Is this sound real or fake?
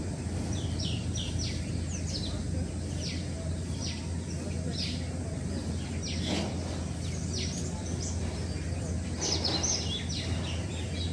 real